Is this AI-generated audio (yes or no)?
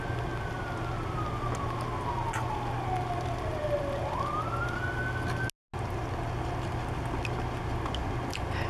no